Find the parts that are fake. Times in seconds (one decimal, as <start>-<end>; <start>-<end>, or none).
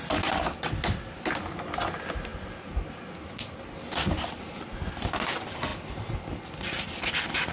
none